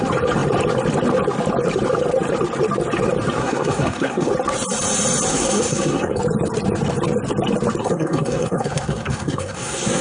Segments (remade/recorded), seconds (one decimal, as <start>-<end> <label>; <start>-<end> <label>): 0.0-3.4 recorded; 3.4-4.3 remade; 4.3-5.3 recorded; 5.3-6.2 remade; 6.2-7.8 recorded; 7.8-10.0 remade